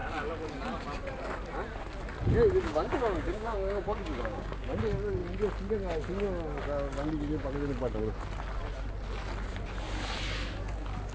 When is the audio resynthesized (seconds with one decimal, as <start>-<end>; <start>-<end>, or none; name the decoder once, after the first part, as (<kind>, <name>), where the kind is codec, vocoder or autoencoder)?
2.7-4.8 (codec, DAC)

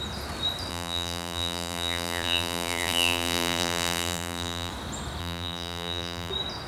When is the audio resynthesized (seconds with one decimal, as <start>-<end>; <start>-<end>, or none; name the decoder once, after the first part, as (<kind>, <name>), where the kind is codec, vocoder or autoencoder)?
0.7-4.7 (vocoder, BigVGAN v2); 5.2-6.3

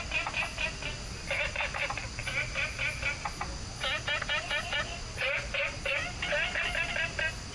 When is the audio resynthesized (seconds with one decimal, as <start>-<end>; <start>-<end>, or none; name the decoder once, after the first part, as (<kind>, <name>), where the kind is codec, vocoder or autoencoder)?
none

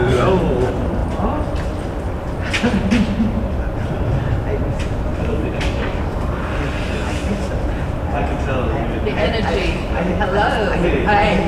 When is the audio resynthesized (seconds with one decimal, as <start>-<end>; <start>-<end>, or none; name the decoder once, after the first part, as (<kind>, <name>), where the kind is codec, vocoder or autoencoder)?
5.1-6.4 (codec, DAC); 9.6-10.1